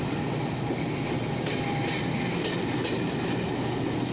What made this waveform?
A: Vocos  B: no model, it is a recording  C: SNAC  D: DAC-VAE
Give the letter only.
B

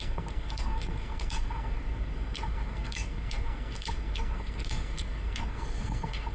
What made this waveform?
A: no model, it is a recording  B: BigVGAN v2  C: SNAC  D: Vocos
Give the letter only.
C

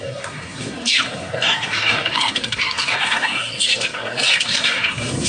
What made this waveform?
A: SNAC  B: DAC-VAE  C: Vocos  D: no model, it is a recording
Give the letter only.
A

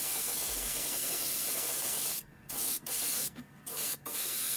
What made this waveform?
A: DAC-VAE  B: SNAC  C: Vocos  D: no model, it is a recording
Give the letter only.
B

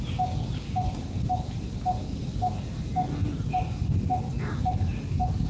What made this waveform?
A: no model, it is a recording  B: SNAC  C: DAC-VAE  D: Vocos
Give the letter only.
A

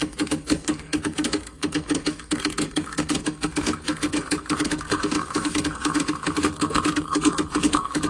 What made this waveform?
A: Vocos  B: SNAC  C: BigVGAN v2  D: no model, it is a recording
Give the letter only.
B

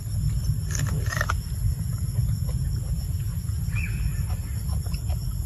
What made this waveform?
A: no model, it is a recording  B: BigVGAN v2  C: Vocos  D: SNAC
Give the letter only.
A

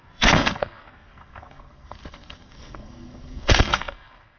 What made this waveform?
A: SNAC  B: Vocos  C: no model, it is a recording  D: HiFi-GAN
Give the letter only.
A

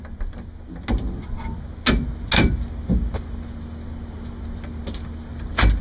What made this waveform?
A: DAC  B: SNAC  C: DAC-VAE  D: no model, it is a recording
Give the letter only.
D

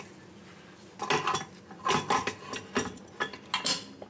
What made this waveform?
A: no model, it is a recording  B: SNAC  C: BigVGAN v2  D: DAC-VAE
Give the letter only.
A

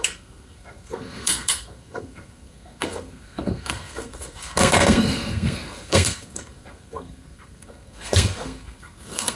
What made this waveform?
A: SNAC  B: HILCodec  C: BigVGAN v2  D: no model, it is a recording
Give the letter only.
A